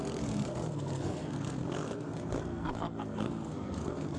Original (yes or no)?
no